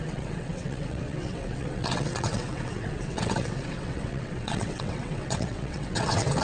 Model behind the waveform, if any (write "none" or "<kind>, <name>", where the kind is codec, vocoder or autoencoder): vocoder, WaveNeXt